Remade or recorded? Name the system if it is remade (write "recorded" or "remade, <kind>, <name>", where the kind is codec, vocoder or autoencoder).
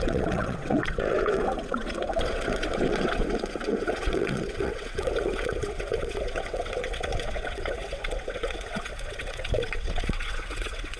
remade, vocoder, WaveNeXt